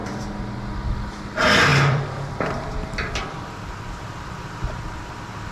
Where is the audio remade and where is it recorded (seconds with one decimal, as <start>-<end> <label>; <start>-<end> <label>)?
0.0-0.7 remade; 0.7-1.7 recorded; 1.7-5.0 remade; 5.0-5.5 recorded